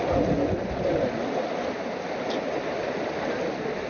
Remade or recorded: recorded